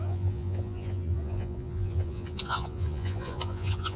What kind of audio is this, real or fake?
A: fake